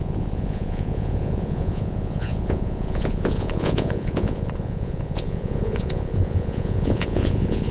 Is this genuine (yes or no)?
no